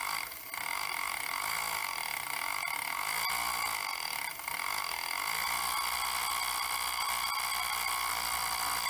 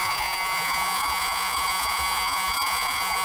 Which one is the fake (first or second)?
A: second